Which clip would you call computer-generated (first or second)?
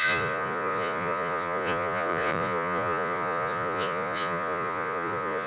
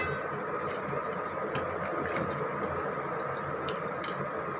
first